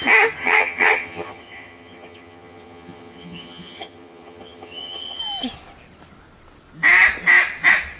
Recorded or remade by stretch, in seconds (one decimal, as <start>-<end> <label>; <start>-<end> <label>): 0.0-0.4 recorded; 0.4-5.2 remade; 5.2-8.0 recorded